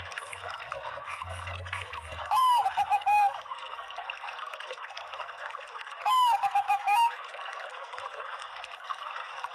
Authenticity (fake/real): fake